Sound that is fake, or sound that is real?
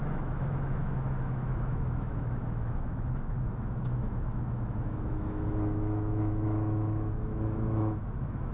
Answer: fake